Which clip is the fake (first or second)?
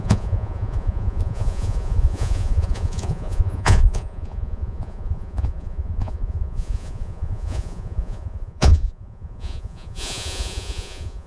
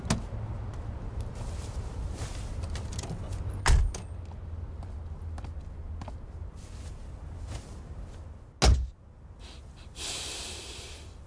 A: first